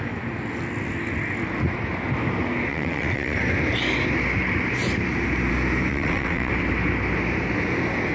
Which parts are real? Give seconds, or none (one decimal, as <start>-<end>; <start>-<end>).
0.0-2.7; 3.4-5.9; 6.5-8.1